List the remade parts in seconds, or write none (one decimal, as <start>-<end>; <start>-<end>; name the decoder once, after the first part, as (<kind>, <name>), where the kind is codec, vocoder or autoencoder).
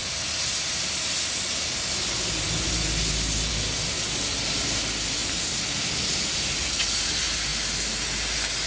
none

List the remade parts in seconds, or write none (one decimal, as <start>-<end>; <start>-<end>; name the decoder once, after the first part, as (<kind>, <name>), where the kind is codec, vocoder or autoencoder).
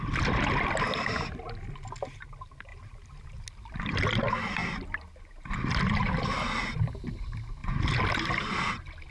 none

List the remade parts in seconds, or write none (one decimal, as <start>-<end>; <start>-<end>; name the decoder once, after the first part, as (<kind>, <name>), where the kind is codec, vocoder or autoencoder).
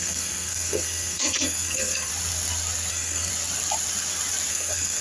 0.0-2.1 (codec, SNAC); 2.9-3.3; 4.5-5.0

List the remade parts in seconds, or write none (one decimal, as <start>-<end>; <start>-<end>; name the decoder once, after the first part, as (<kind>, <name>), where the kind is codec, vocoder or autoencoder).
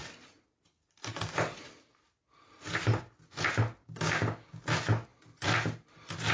3.8-4.6 (codec, DAC)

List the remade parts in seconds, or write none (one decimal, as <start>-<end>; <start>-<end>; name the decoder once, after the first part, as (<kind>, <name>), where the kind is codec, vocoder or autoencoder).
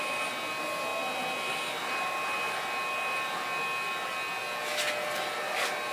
none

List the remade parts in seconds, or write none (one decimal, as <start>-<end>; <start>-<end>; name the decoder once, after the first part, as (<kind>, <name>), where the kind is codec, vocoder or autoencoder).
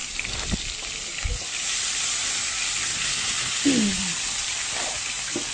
0.0-0.6 (vocoder, BigVGAN v2)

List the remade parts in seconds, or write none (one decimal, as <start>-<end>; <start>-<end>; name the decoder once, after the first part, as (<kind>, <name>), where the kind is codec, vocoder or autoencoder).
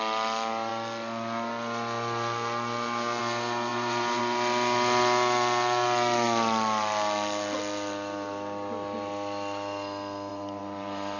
3.7-4.2 (vocoder, BigVGAN v2); 10.3-11.2